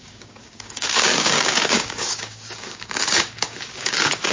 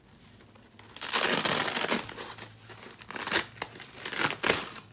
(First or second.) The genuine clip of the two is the second